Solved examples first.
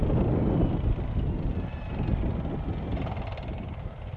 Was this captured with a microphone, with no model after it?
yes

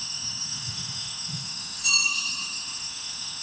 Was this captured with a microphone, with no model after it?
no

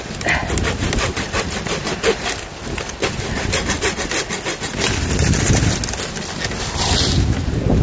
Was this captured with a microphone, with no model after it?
yes